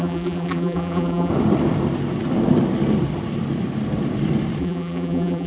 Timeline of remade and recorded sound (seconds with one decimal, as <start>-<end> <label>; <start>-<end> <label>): 0.0-1.3 remade; 1.3-4.6 recorded; 4.6-5.5 remade